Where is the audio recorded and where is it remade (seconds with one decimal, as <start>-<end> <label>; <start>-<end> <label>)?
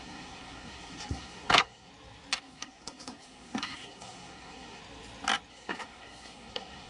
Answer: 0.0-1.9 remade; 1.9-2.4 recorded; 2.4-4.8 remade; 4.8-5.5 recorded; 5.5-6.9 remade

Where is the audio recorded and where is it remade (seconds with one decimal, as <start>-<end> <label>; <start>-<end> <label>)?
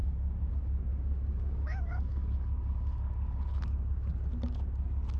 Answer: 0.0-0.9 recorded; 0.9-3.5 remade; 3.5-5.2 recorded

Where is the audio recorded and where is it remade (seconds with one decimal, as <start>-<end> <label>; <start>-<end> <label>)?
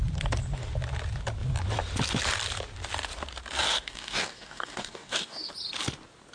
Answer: 0.0-3.7 recorded; 3.7-5.5 remade; 5.5-6.3 recorded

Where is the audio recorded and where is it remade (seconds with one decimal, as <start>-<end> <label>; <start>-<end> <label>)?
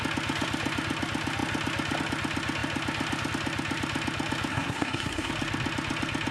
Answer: 0.0-4.5 recorded; 4.5-5.3 remade; 5.3-6.3 recorded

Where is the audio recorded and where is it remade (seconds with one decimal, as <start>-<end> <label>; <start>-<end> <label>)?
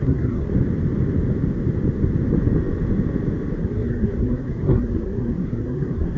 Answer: 0.0-0.5 remade; 0.5-3.6 recorded; 3.6-6.2 remade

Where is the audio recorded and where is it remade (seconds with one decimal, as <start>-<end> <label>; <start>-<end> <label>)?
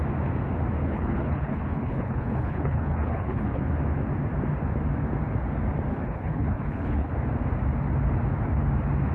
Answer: 0.0-0.8 recorded; 0.8-3.7 remade; 3.7-5.9 recorded; 5.9-7.1 remade; 7.1-9.1 recorded